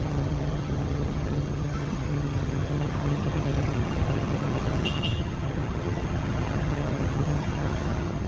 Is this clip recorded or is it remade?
remade